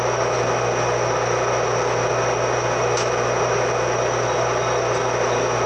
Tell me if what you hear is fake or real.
real